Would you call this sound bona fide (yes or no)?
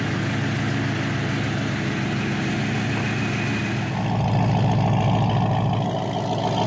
yes